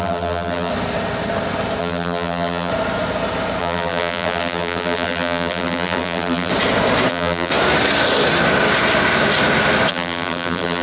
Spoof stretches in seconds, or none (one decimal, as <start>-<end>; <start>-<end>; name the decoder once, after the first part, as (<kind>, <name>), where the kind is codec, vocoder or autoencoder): 0.0-0.7 (vocoder, BigVGAN v2); 1.8-2.7; 3.6-6.5; 7.1-7.5; 9.9-10.8